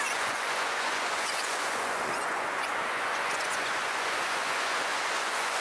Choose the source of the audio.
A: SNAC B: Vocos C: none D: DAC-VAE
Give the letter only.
B